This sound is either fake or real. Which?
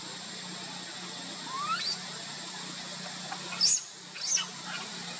real